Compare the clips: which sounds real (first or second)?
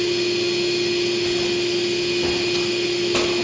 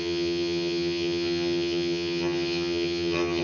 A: first